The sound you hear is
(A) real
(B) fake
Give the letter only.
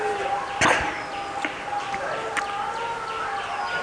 A